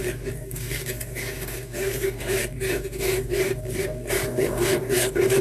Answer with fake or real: fake